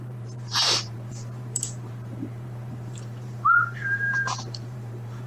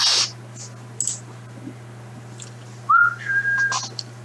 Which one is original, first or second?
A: second